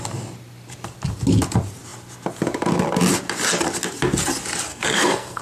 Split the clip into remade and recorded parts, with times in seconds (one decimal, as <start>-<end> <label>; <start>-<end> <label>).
0.0-4.7 recorded; 4.7-5.4 remade